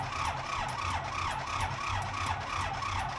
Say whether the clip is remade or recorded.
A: recorded